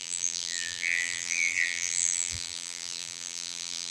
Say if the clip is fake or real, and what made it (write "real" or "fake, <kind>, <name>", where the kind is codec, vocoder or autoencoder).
fake, vocoder, BigVGAN v2